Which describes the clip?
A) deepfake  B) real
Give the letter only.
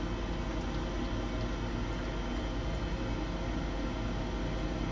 B